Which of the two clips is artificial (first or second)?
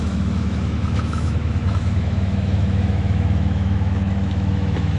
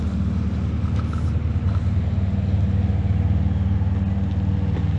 first